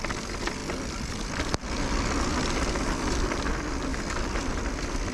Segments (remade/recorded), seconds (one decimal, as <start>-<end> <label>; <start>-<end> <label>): 0.0-0.6 recorded; 0.6-3.5 remade; 3.5-3.9 recorded; 3.9-5.1 remade